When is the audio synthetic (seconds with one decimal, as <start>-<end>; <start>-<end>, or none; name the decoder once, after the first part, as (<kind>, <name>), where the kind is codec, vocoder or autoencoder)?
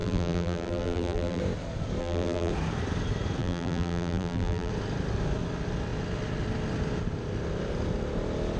0.0-1.4 (vocoder, BigVGAN v2); 2.0-2.5; 3.4-4.7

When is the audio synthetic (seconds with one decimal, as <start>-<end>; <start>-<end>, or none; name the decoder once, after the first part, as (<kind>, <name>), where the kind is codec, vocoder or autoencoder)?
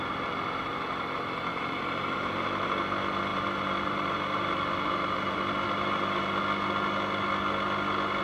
1.5-2.7 (vocoder, BigVGAN v2); 3.3-6.4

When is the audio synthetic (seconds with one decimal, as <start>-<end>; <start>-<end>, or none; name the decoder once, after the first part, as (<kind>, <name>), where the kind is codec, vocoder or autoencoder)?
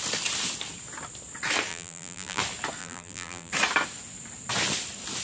1.7-2.4 (vocoder, BigVGAN v2); 2.8-3.5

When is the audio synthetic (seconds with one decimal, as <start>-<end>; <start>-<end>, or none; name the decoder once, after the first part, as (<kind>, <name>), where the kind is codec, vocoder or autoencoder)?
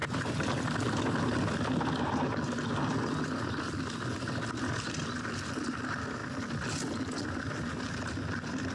0.0-0.6 (vocoder, BigVGAN v2)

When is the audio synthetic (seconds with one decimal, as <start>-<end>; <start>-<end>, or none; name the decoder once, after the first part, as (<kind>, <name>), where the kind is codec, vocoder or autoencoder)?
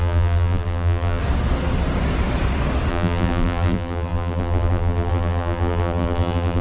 0.0-1.2 (vocoder, BigVGAN v2); 2.9-6.6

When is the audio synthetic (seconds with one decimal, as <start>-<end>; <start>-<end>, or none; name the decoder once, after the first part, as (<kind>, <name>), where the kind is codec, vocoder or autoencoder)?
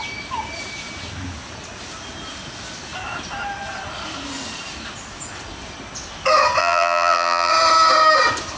6.6-7.5 (vocoder, BigVGAN v2)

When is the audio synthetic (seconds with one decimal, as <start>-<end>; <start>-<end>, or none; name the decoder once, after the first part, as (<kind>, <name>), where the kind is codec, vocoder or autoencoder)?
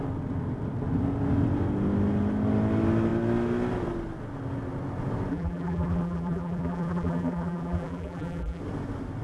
5.3-8.6 (vocoder, BigVGAN v2)